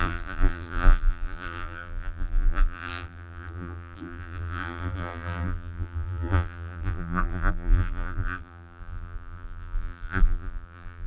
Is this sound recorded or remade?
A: remade